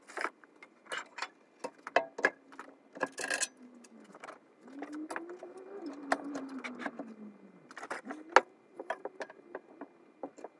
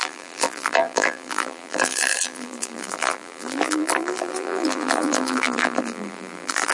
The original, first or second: first